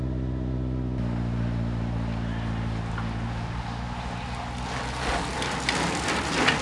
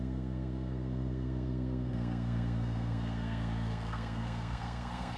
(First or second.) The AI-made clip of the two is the second